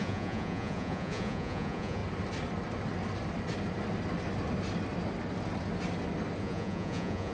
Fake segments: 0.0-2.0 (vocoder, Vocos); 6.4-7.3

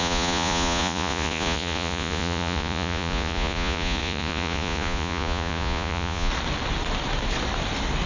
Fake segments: 0.0-6.3 (vocoder, Vocos)